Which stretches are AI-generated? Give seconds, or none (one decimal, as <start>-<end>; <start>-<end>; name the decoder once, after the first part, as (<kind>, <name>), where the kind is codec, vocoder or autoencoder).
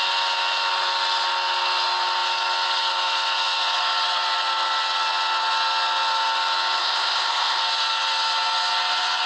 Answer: 6.8-7.6 (codec, ZipCodec)